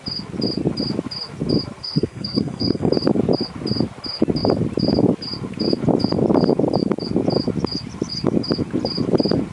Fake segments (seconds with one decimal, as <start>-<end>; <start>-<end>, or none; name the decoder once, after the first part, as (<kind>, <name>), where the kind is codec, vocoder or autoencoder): 1.8-2.9 (codec, SNAC)